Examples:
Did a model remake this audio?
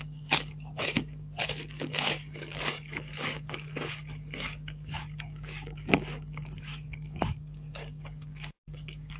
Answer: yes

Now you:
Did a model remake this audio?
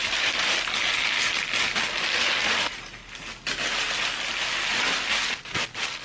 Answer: no